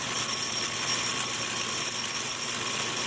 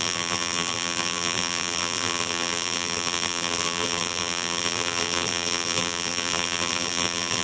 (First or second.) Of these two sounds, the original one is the first